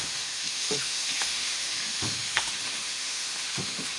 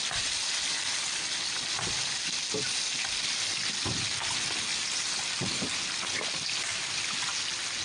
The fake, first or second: first